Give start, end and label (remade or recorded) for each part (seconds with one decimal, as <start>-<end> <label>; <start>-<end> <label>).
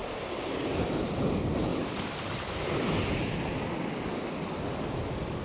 0.0-5.4 recorded